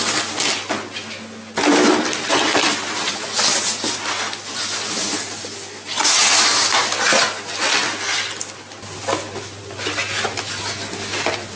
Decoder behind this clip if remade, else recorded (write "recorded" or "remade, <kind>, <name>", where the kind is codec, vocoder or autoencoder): recorded